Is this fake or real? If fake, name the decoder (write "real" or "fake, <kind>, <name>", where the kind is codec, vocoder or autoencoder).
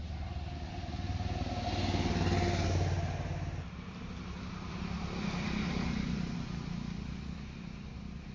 real